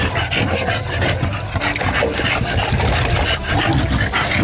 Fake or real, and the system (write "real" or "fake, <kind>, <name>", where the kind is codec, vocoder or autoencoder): real